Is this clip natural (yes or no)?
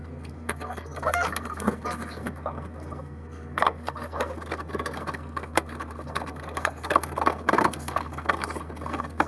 no